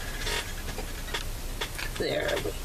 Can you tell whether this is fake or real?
real